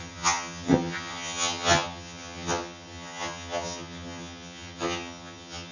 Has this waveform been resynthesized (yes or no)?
yes